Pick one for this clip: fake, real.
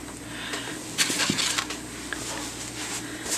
real